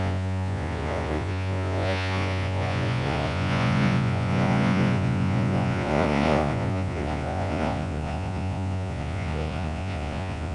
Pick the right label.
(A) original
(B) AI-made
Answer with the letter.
B